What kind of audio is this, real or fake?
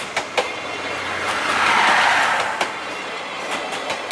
real